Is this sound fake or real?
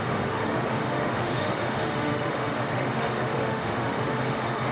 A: fake